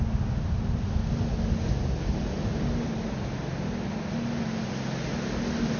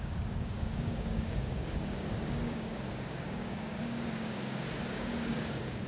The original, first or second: first